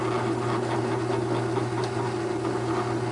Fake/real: real